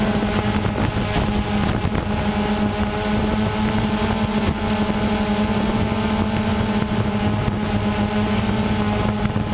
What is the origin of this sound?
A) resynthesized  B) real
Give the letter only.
B